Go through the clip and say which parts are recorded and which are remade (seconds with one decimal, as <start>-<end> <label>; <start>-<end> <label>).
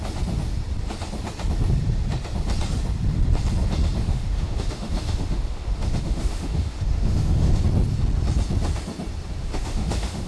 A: 0.0-4.0 recorded; 4.0-7.6 remade; 7.6-9.5 recorded; 9.5-10.3 remade